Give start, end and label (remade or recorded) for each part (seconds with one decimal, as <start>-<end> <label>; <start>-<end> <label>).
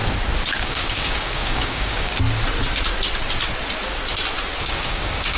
0.0-0.6 recorded; 0.6-2.1 remade; 2.1-4.6 recorded; 4.6-5.4 remade